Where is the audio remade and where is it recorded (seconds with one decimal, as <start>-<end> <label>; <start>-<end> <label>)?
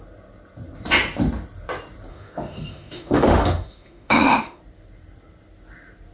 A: 0.0-2.1 recorded; 2.1-4.6 remade; 4.6-6.1 recorded